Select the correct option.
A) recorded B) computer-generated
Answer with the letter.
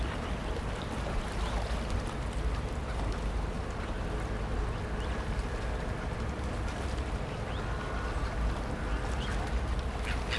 A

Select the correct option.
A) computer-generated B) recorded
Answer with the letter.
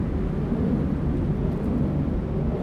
B